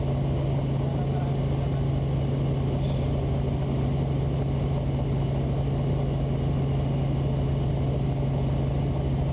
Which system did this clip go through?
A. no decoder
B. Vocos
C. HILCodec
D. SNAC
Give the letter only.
A